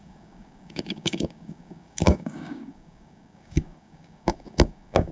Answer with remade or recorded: remade